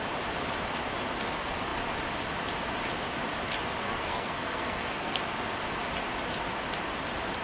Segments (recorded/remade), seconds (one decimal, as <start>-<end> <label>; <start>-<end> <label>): 0.0-3.8 recorded; 3.8-5.2 remade; 5.2-7.4 recorded